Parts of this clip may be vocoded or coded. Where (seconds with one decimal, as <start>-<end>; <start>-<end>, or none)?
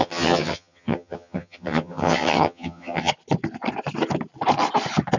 0.0-3.1